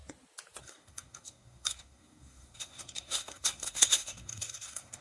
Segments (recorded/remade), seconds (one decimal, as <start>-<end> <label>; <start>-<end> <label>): 0.0-0.6 recorded; 0.6-5.0 remade